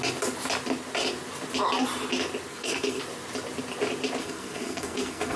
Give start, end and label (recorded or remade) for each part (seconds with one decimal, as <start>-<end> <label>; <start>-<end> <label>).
0.0-2.5 recorded; 2.5-3.0 remade; 3.0-4.2 recorded; 4.2-5.4 remade